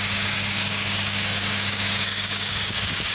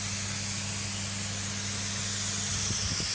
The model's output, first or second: first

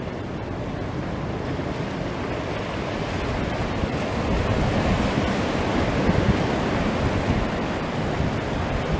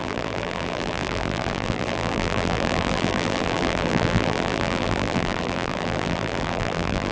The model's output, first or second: second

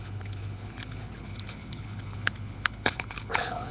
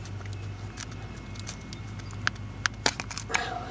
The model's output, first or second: first